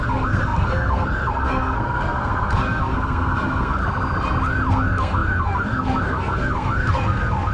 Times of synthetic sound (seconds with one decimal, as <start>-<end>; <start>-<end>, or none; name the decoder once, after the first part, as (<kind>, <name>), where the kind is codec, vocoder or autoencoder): 0.0-3.8 (codec, SNAC); 4.7-7.5